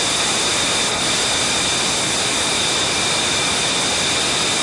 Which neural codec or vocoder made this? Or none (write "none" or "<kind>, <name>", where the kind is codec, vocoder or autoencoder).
none